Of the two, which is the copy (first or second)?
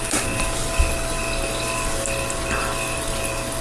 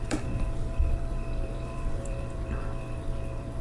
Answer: second